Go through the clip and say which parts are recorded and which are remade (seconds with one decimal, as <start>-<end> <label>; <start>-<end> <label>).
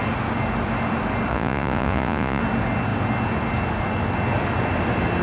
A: 0.0-1.3 recorded; 1.3-2.4 remade; 2.4-5.2 recorded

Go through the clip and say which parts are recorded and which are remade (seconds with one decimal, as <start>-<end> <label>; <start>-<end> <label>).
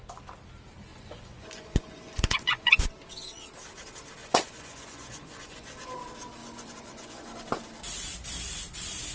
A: 0.0-0.9 recorded; 0.9-2.8 remade; 2.8-4.2 recorded; 4.2-5.9 remade; 5.9-6.4 recorded; 6.4-7.3 remade; 7.3-9.1 recorded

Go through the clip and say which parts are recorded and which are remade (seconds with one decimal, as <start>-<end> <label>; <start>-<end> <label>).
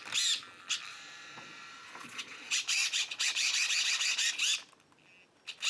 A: 0.0-0.9 recorded; 0.9-4.3 remade; 4.3-5.7 recorded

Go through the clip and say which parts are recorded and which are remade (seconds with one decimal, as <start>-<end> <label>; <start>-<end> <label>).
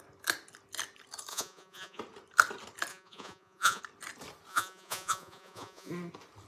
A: 0.0-1.3 recorded; 1.3-2.0 remade; 2.0-2.9 recorded; 2.9-3.8 remade; 3.8-4.5 recorded; 4.5-5.9 remade; 5.9-6.5 recorded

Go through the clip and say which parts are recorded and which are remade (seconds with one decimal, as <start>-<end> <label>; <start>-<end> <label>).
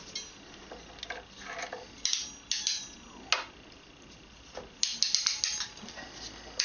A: 0.0-6.6 recorded